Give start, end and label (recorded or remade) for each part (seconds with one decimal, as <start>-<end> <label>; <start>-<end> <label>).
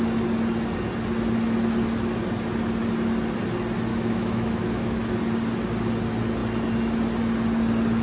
0.0-3.9 recorded; 3.9-5.2 remade; 5.2-8.0 recorded